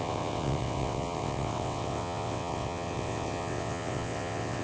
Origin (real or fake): fake